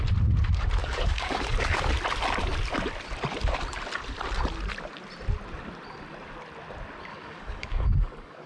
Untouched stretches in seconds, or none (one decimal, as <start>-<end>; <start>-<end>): 0.0-0.8; 1.9-7.1